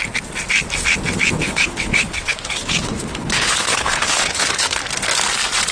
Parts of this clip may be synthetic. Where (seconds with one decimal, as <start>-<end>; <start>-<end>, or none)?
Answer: 1.4-4.8